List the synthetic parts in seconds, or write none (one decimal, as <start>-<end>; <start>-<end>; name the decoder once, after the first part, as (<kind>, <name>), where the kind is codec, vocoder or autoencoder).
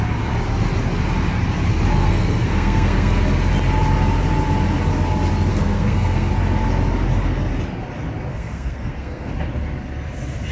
2.0-3.2 (codec, SNAC); 5.5-6.3; 8.3-9.3